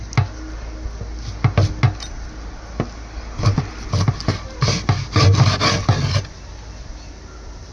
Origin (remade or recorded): recorded